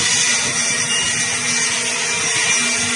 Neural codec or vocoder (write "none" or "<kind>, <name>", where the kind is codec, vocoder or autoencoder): none